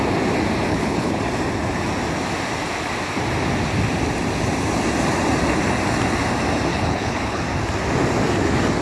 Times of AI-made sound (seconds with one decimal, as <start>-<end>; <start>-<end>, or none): 0.7-1.2; 6.7-7.4